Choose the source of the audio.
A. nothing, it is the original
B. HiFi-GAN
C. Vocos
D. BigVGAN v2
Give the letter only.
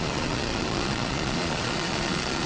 C